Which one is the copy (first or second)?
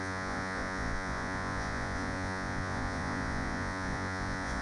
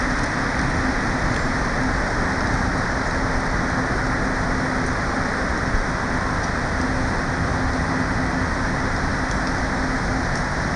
first